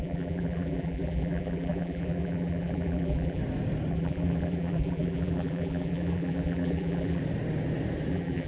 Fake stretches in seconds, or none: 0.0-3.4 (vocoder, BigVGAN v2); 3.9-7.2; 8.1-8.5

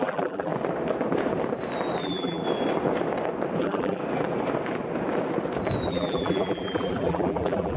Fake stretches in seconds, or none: 0.0-0.5 (vocoder, BigVGAN v2); 2.0-2.4; 3.6-4.0; 5.9-7.8